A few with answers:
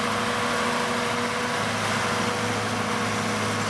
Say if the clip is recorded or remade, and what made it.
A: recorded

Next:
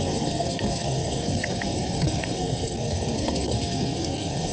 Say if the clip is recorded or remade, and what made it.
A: remade, codec, SNAC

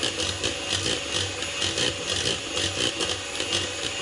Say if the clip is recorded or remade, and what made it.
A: recorded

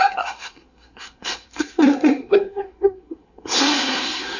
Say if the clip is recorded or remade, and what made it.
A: remade, codec, SNAC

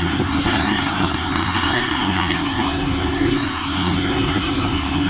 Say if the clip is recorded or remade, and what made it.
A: remade, codec, SNAC